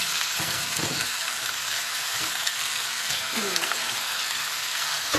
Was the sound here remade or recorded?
remade